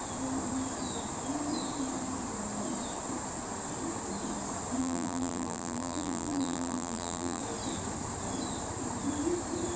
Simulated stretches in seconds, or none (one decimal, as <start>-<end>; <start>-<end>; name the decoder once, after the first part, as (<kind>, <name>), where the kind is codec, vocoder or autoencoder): 4.8-7.4 (vocoder, BigVGAN v2)